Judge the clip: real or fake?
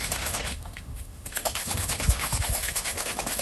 fake